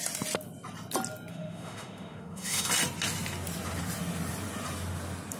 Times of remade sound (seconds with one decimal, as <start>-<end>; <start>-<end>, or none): 1.3-2.7